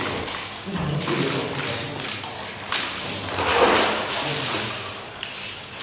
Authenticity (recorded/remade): recorded